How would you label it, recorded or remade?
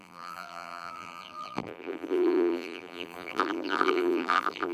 remade